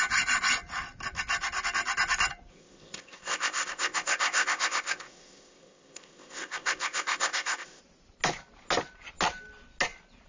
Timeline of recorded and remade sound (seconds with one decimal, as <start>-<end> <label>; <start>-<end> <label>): 0.0-2.5 recorded; 2.5-7.8 remade; 7.8-10.3 recorded